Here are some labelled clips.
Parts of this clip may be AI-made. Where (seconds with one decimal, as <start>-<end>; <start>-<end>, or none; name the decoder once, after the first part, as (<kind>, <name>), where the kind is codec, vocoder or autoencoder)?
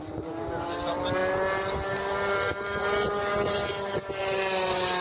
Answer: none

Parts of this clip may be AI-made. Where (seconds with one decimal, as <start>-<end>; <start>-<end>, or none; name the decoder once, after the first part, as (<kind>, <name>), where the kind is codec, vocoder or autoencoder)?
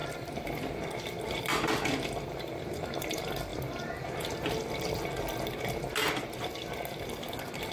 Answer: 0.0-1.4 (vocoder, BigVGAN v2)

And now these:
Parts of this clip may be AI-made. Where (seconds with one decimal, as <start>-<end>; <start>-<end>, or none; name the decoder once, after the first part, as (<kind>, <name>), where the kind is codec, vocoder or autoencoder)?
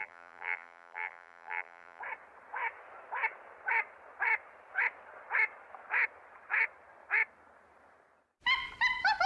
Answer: 0.0-2.0 (vocoder, BigVGAN v2)